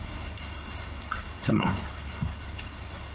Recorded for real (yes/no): no